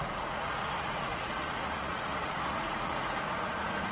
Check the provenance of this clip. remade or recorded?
remade